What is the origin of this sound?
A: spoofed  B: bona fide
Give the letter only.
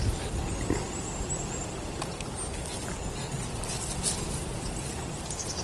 B